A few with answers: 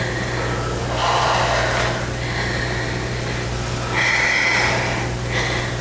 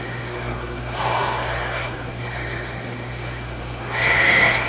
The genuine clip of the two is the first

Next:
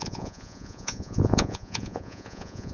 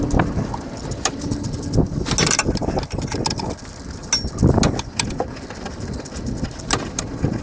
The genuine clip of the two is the second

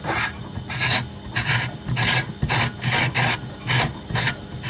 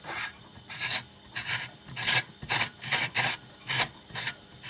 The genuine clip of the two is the first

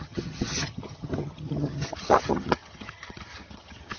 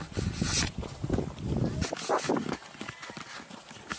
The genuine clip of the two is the second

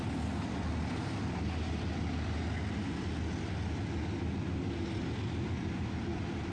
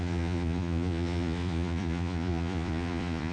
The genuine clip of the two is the first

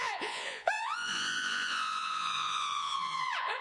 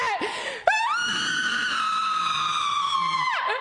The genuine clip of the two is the second